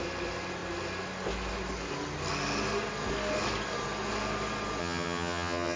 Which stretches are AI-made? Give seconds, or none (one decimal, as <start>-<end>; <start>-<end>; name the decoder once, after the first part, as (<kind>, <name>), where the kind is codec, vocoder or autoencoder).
4.8-5.8 (vocoder, HiFi-GAN)